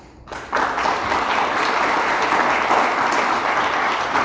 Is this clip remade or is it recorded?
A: recorded